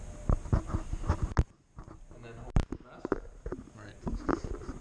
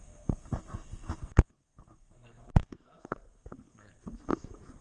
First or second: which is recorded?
first